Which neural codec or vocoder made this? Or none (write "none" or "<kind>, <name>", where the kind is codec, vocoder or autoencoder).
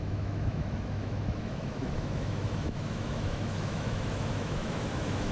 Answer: autoencoder, DAC-VAE